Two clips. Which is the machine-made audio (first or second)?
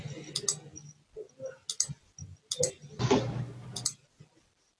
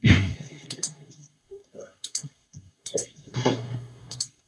second